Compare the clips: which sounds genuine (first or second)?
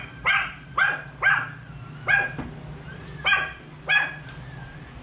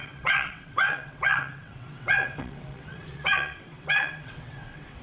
first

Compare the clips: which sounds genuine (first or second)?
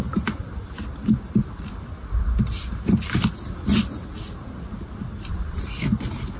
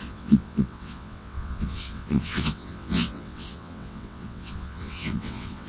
first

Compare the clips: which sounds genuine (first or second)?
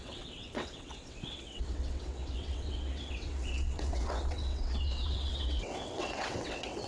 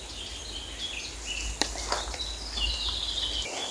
second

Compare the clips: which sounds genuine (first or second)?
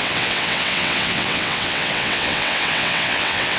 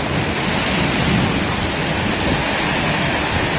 second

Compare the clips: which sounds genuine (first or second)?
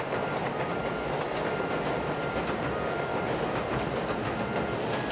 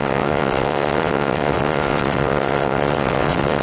first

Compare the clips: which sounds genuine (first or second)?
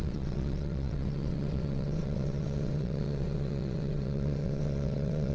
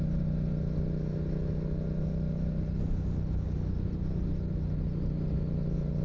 second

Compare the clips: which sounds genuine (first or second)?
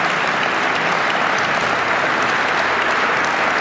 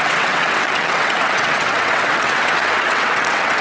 first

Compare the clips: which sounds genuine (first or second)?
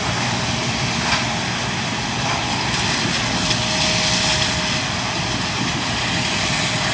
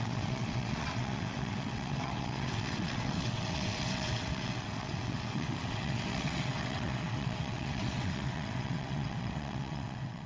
first